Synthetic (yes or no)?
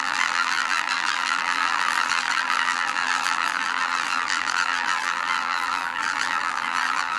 yes